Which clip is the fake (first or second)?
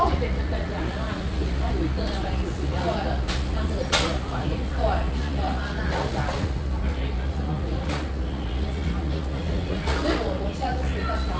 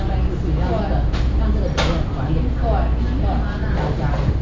first